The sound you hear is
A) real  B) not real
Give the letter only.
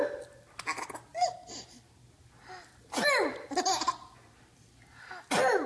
A